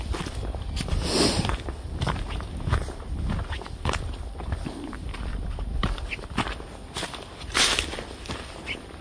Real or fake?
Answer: real